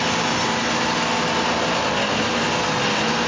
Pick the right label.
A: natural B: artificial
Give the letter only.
A